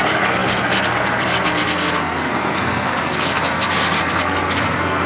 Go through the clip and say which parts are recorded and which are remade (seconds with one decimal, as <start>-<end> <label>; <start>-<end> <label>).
0.0-5.1 remade